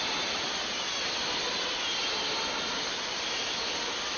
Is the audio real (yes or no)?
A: yes